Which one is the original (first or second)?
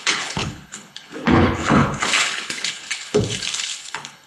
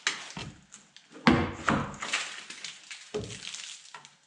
second